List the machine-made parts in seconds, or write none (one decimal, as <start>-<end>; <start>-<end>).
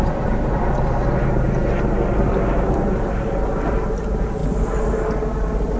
0.0-4.4